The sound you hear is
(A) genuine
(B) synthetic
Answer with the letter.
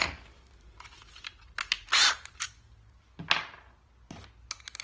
A